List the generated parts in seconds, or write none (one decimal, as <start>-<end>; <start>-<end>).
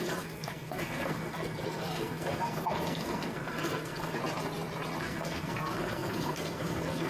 0.0-4.2; 5.0-7.1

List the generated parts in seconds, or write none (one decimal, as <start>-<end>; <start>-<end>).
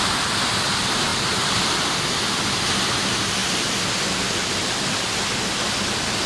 none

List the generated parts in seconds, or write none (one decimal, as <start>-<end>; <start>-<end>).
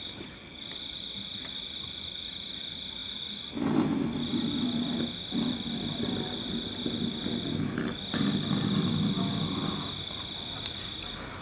none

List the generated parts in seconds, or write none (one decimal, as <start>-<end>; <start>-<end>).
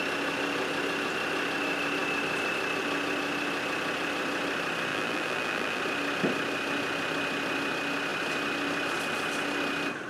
4.9-5.8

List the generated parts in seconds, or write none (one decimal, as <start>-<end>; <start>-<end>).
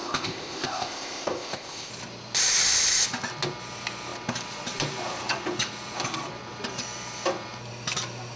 0.0-1.9